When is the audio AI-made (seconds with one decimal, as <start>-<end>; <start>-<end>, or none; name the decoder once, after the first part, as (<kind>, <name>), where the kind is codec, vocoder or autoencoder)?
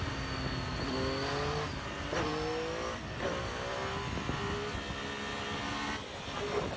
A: none